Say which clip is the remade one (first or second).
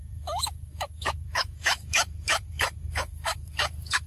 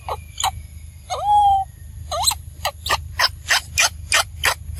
first